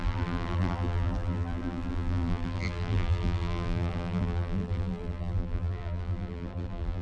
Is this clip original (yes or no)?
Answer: no